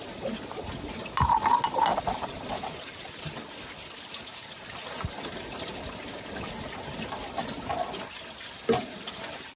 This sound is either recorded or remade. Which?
recorded